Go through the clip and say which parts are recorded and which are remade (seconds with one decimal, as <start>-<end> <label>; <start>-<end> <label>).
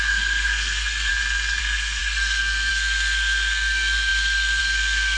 0.0-1.1 remade; 1.1-1.6 recorded; 1.6-5.2 remade